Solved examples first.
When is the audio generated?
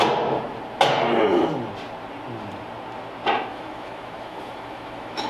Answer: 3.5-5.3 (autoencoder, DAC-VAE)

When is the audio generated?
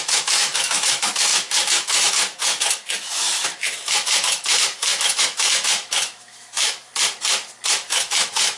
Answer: 0.0-6.9 (autoencoder, DAC-VAE); 7.7-8.6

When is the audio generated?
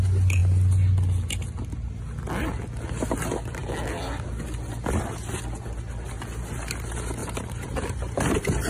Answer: 7.2-8.7 (vocoder, BigVGAN v2)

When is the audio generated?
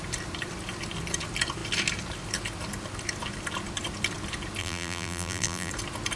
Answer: 4.6-5.7 (vocoder, BigVGAN v2)